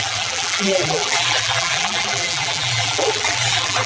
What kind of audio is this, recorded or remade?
remade